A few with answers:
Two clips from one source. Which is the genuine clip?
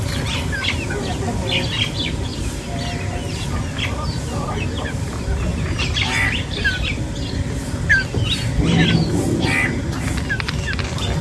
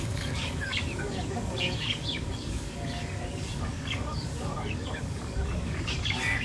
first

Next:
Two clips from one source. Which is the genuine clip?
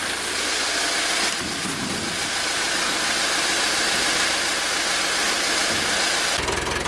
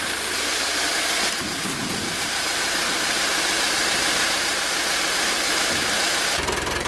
first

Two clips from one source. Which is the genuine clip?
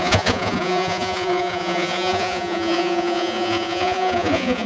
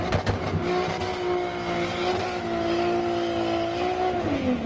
second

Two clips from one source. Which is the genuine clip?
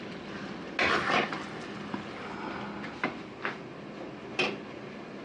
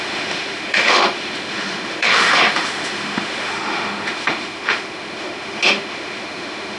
first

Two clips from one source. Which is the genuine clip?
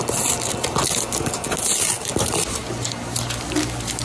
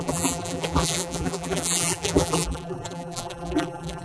first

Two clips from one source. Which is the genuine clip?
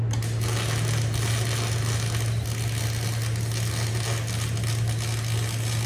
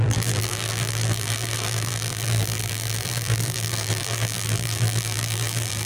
first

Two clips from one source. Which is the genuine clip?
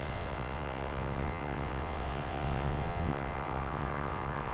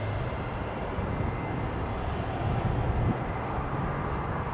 second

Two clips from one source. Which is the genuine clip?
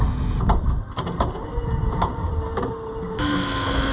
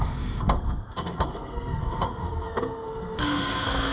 first